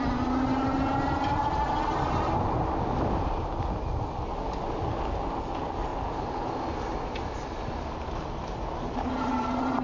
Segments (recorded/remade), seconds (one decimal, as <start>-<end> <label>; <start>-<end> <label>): 0.0-9.8 recorded